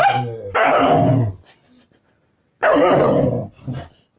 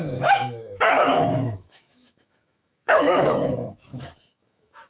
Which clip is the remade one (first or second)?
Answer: second